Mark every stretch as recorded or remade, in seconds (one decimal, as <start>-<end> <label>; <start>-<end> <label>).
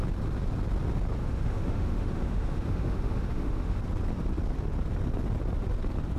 0.0-1.2 recorded; 1.2-3.8 remade; 3.8-6.2 recorded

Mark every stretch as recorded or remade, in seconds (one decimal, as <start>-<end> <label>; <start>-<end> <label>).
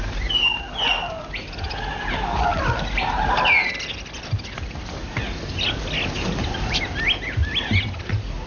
0.0-8.5 recorded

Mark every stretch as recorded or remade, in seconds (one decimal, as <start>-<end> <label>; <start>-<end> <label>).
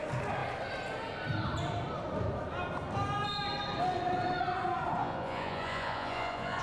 0.0-5.0 recorded; 5.0-6.6 remade